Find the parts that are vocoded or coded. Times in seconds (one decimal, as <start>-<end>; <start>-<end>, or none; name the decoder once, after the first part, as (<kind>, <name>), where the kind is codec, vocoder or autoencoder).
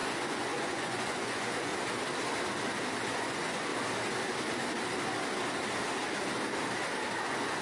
0.0-1.7 (vocoder, Vocos); 3.1-3.7; 7.1-7.6